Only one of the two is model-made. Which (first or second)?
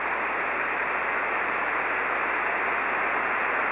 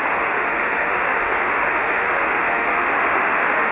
second